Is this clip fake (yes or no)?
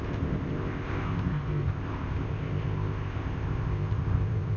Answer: yes